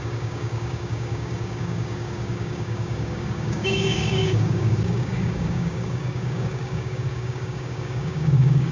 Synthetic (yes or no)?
yes